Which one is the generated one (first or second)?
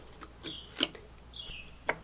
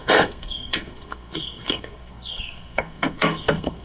second